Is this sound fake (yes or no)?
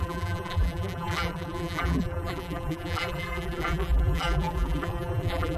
yes